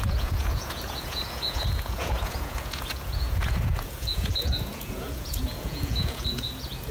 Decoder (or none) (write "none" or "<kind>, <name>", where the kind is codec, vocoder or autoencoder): vocoder, Vocos